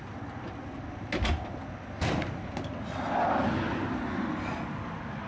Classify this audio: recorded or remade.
recorded